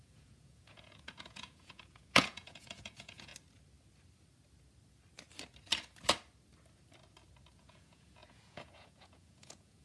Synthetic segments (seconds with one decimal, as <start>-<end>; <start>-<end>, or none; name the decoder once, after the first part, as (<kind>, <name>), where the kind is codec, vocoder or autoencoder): 0.0-3.3 (vocoder, Vocos); 7.5-9.8